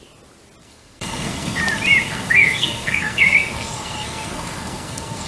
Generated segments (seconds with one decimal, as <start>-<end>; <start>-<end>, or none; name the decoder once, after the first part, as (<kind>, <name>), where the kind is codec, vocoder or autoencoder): 0.6-1.6 (codec, SNAC); 2.0-5.3